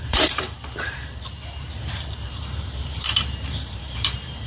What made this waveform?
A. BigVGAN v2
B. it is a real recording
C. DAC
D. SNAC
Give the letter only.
A